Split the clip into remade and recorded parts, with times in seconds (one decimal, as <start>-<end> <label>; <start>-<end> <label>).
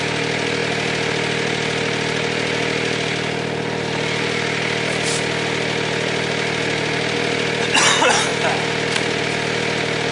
0.0-10.1 recorded